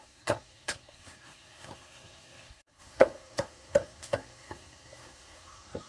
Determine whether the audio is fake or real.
fake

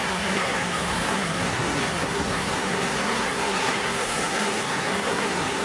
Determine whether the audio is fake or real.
fake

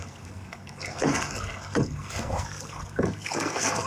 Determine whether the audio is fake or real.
fake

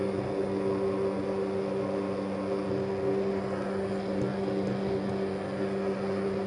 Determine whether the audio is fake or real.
real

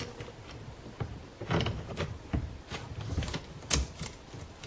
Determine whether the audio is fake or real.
real